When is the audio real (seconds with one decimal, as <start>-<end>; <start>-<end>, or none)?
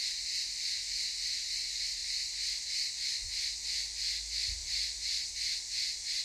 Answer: 0.0-6.2